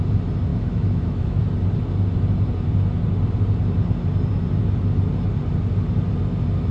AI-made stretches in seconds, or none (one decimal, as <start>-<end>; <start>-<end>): 0.5-1.4